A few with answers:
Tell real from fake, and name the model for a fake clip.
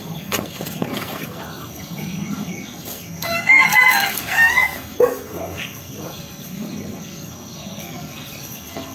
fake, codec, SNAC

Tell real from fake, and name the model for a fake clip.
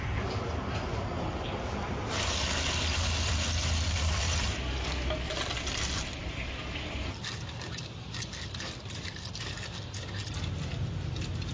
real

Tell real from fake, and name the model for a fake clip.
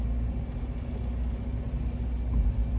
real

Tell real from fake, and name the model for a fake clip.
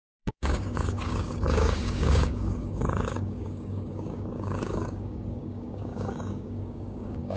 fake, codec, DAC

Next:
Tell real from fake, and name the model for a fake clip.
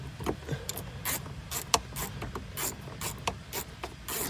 real